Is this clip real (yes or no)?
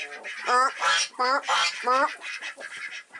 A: yes